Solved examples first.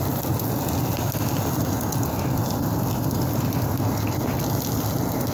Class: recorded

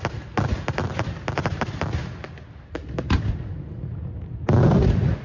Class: recorded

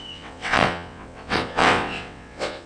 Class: remade